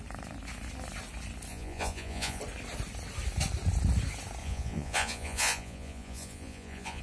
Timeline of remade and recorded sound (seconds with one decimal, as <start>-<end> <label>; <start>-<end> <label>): 0.0-1.5 recorded; 1.5-2.4 remade; 2.4-4.4 recorded; 4.4-7.0 remade